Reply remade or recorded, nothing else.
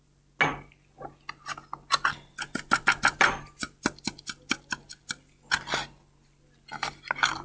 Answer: recorded